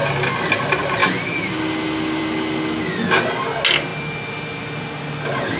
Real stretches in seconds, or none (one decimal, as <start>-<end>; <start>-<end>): 0.0-5.6